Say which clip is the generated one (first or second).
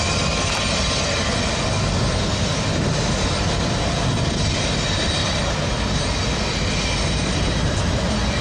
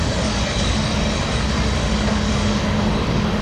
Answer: second